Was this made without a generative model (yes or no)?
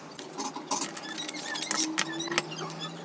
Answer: yes